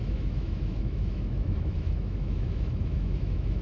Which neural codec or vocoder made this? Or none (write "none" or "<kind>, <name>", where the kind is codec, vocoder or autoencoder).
autoencoder, DAC-VAE